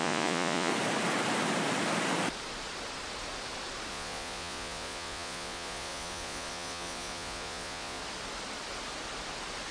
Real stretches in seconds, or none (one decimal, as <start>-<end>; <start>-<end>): 0.7-3.9; 8.0-9.7